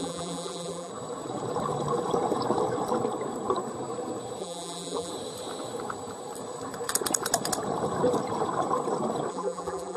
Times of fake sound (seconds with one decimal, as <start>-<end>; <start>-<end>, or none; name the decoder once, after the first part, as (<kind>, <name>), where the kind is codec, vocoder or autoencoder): 0.0-0.9 (vocoder, BigVGAN v2); 4.4-5.1; 9.3-10.0